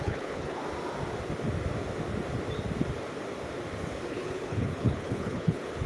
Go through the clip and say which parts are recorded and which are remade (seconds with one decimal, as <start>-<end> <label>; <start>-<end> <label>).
0.0-0.6 remade; 0.6-4.1 recorded; 4.1-5.9 remade